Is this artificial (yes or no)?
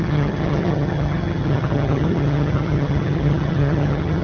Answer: yes